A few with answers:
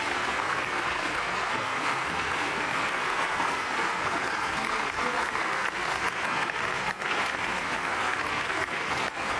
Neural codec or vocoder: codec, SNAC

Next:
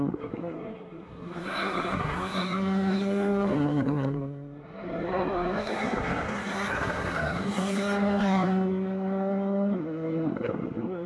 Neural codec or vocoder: codec, SNAC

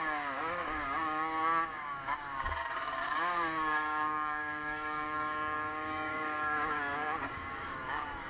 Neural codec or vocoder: codec, DAC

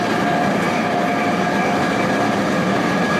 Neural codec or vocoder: none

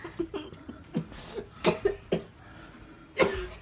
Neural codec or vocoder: none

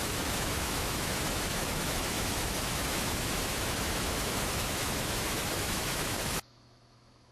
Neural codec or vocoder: autoencoder, DAC-VAE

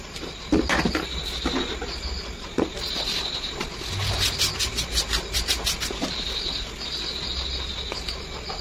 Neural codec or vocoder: none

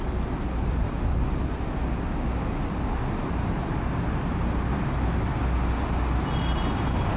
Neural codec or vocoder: none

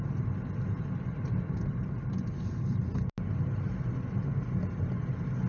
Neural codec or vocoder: none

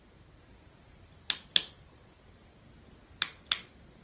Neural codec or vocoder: none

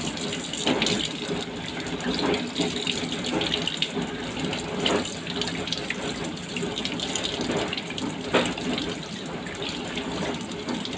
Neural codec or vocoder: none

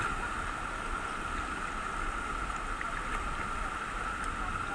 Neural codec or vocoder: none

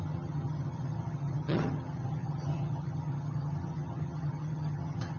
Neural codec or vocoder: vocoder, HiFi-GAN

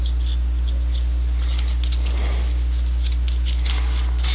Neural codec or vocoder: none